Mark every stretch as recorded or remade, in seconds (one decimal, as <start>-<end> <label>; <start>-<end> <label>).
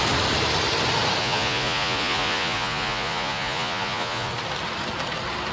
0.0-1.2 recorded; 1.2-4.3 remade; 4.3-5.5 recorded